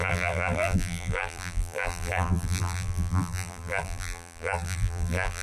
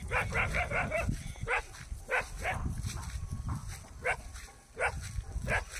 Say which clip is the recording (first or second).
second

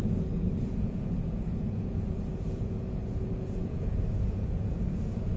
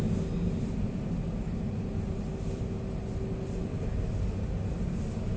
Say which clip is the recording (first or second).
second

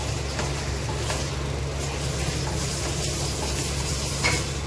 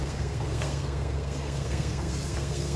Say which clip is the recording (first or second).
first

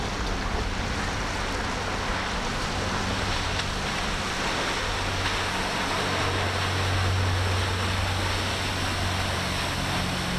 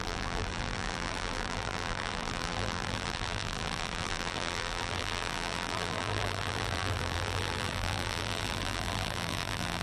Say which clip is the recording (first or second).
first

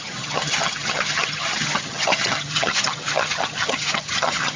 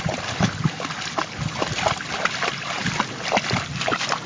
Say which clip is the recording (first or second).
second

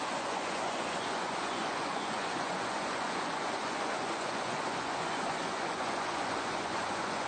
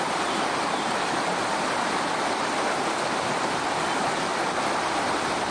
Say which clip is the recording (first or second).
second